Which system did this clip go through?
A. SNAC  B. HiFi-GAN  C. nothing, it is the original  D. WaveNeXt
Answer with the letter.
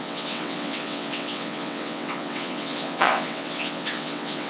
D